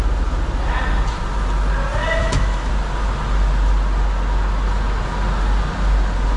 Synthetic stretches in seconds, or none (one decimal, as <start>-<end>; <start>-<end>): 2.2-2.7